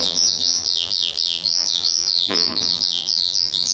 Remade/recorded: remade